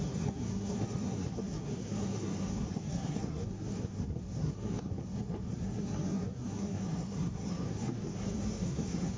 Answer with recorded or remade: remade